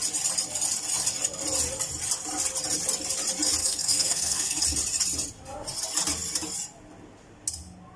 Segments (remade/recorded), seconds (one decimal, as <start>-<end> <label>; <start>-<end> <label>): 0.0-3.6 recorded; 3.6-4.6 remade; 4.6-8.0 recorded